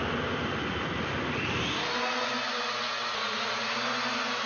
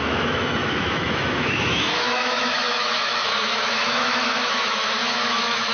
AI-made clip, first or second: second